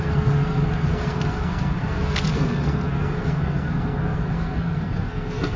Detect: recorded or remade remade